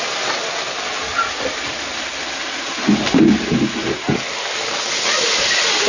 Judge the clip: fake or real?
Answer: real